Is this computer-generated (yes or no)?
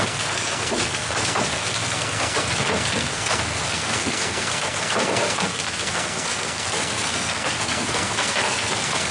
yes